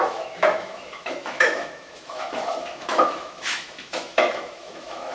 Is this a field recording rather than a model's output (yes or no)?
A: no